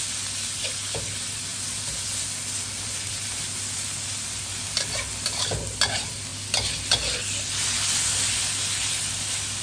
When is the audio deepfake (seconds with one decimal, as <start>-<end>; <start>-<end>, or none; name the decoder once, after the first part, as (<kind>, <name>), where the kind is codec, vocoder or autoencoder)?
none